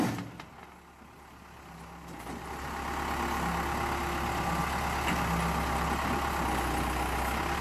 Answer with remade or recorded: recorded